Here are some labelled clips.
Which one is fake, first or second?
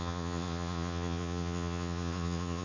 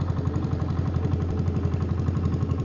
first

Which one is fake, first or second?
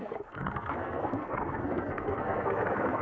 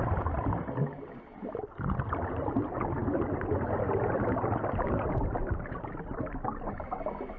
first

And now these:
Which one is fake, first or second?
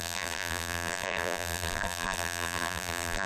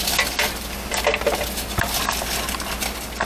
first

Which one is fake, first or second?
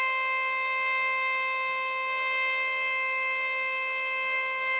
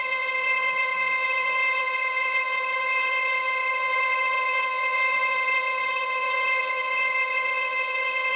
second